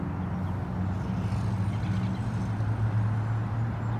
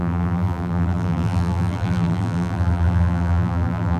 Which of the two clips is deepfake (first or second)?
second